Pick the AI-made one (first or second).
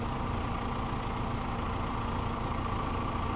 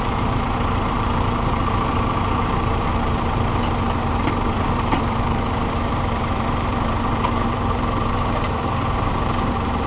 second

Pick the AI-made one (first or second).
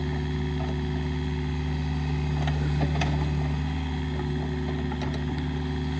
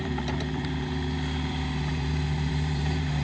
second